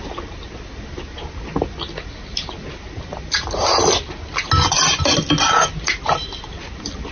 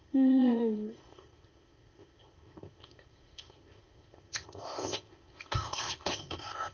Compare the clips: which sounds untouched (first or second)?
first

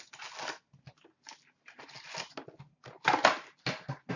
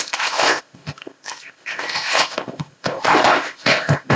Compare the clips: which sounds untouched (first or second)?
first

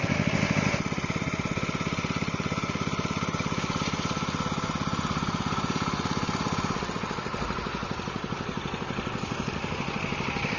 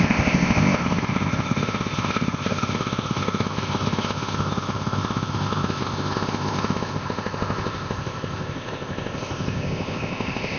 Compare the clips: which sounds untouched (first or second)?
first